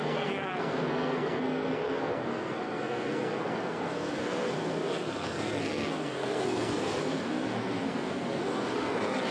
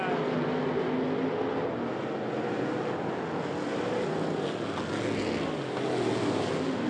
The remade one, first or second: first